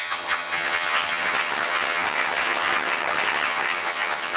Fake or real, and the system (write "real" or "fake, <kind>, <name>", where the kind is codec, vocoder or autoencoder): fake, vocoder, HiFi-GAN